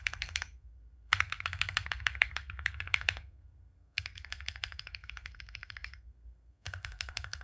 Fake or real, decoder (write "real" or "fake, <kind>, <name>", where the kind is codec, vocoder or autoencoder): fake, codec, SNAC